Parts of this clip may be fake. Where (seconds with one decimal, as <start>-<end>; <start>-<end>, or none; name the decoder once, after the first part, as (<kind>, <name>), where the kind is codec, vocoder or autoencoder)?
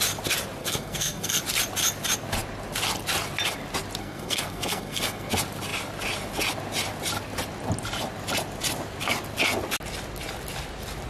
0.6-1.4 (codec, SNAC); 4.0-5.3